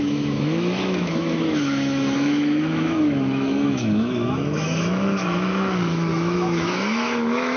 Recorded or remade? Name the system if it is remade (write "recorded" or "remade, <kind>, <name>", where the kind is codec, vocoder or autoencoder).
remade, autoencoder, DAC-VAE